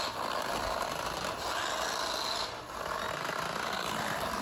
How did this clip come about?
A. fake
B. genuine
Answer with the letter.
B